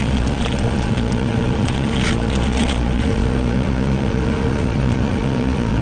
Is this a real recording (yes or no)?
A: no